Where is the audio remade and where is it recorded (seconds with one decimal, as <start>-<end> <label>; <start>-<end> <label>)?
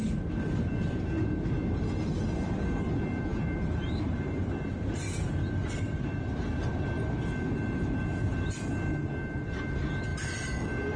0.0-11.0 recorded